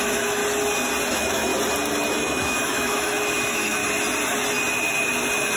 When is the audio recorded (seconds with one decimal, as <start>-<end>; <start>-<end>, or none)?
0.4-1.1; 1.5-2.1; 3.8-5.6

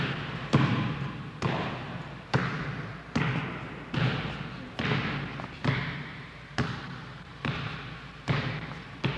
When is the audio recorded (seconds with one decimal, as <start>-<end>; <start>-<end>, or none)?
2.4-5.0

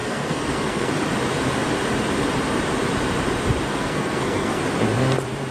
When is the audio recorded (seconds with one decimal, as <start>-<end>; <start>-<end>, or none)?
0.9-3.7; 4.6-5.5